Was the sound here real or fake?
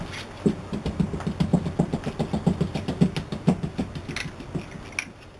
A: real